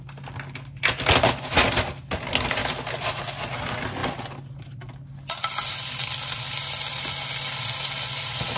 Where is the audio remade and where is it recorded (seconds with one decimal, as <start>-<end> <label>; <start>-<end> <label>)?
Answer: 0.0-8.6 recorded